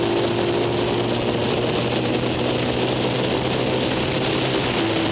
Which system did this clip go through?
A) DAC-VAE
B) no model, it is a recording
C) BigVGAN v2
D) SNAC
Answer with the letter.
B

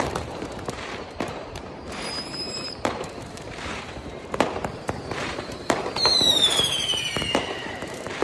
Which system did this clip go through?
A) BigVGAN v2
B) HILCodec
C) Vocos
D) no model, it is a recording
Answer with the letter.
A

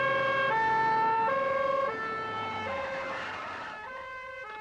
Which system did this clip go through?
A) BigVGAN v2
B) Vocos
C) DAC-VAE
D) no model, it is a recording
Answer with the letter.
A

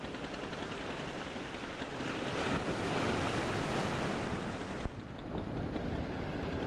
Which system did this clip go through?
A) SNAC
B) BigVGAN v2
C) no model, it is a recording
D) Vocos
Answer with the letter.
C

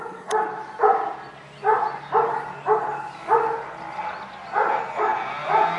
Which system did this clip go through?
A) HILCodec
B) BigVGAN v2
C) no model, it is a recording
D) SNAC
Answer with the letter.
C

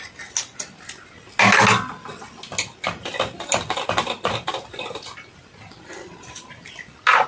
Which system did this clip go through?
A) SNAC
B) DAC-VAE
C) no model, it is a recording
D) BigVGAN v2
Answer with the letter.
C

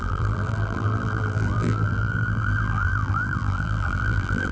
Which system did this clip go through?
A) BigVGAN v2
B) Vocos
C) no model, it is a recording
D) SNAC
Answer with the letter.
A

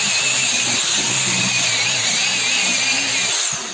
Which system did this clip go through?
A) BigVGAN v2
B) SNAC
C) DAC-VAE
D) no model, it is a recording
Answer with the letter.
D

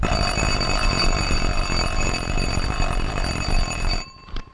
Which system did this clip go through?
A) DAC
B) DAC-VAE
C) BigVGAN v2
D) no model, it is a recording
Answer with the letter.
C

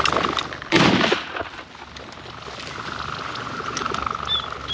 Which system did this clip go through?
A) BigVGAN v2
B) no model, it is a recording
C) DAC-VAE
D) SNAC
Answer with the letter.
B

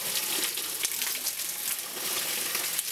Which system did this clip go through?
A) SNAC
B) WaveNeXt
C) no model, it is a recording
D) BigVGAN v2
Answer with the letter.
C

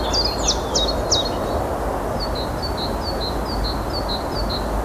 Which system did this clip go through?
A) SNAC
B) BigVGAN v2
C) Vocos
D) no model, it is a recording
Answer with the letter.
D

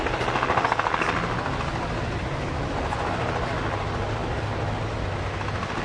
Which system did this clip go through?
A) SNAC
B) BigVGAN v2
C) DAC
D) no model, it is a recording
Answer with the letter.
D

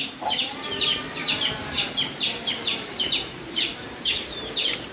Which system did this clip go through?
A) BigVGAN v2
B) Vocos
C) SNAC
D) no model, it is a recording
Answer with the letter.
A